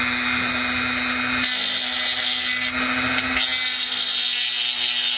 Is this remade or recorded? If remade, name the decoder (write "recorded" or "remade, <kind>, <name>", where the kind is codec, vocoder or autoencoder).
recorded